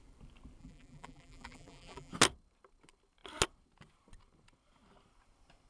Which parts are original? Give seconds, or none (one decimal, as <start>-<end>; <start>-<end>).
0.0-0.6; 2.1-5.7